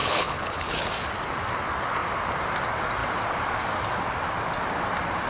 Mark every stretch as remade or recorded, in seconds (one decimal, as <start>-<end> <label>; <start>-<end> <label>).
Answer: 0.0-0.9 remade; 0.9-5.3 recorded